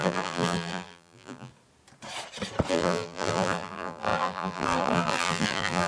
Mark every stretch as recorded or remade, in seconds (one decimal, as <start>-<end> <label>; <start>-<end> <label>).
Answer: 0.0-1.5 remade; 1.5-2.7 recorded; 2.7-5.9 remade